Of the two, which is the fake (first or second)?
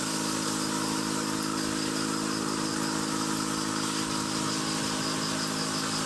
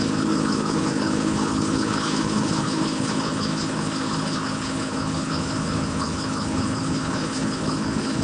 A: second